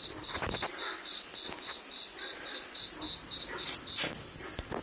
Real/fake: real